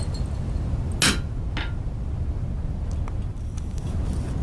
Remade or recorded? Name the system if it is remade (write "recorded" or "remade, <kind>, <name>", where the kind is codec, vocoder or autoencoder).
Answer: recorded